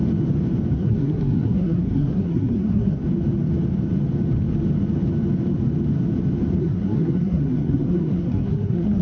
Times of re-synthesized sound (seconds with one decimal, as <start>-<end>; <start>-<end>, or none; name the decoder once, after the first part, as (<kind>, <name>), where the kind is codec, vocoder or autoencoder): 0.7-3.0 (codec, SNAC); 6.6-9.0